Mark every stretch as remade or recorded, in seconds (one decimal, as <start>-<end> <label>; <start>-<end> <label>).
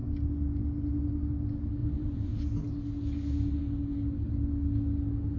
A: 0.0-1.8 recorded; 1.8-2.3 remade; 2.3-5.4 recorded